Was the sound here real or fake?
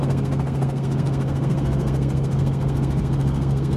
fake